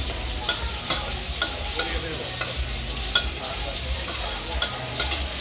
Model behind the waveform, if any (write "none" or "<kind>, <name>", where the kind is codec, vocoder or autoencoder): none